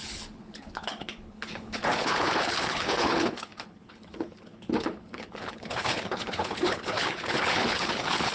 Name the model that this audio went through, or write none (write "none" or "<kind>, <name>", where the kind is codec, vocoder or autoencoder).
codec, HILCodec